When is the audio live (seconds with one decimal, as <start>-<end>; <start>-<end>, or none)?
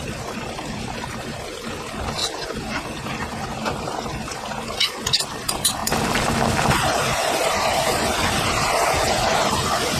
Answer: 0.0-5.8; 6.7-7.2; 8.0-10.0